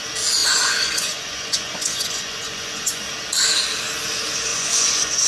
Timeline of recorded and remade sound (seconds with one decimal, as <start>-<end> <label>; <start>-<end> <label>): 0.0-0.4 recorded; 0.4-3.0 remade; 3.0-4.5 recorded; 4.5-5.3 remade

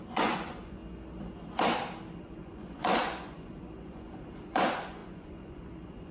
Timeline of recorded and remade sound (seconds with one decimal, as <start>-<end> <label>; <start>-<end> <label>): 0.0-0.8 remade; 0.8-2.2 recorded; 2.2-6.1 remade

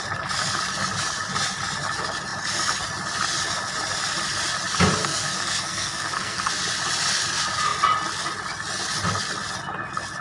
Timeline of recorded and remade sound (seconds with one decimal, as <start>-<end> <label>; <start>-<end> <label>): 0.0-5.0 recorded; 5.0-6.5 remade; 6.5-10.2 recorded

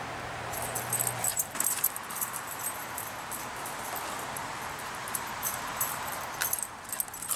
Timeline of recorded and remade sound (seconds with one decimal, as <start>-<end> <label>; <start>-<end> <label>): 0.0-1.3 recorded; 1.3-3.9 remade; 3.9-4.4 recorded; 4.4-6.2 remade; 6.2-7.4 recorded

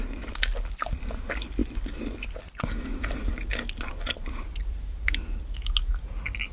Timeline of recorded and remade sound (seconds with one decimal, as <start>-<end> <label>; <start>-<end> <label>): 0.0-6.5 recorded

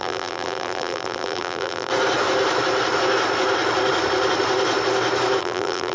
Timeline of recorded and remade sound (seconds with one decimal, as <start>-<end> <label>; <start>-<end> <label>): 0.0-1.9 remade; 1.9-5.4 recorded; 5.4-5.9 remade

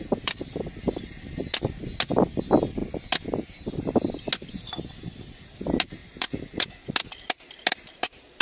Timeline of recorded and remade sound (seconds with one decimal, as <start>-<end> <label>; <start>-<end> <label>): 0.0-6.0 recorded; 6.0-6.8 remade; 6.8-8.4 recorded